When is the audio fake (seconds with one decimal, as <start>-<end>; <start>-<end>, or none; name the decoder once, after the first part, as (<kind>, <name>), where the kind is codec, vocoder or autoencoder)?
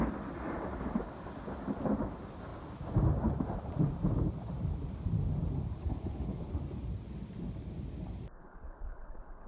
5.8-6.5 (codec, HILCodec); 8.4-9.5